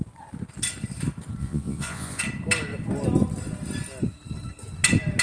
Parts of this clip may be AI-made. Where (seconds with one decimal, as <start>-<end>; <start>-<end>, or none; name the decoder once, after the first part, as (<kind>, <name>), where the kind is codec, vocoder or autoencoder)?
1.4-2.2 (vocoder, Vocos)